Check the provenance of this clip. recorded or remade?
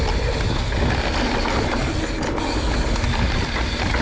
recorded